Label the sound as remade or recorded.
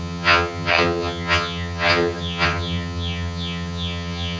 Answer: remade